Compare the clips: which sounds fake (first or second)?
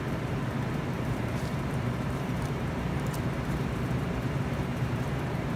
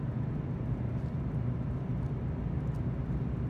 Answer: first